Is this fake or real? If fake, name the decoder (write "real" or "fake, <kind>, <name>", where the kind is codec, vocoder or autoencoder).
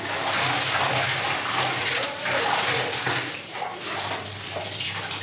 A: real